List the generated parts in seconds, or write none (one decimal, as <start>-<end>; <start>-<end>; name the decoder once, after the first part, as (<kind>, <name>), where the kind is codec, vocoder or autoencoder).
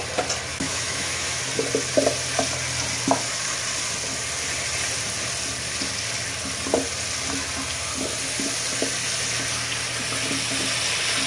0.5-1.4 (autoencoder, DAC-VAE)